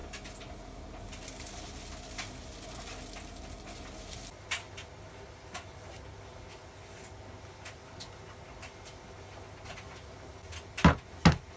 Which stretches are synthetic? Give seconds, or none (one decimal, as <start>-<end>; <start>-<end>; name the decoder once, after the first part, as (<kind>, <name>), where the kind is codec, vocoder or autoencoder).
none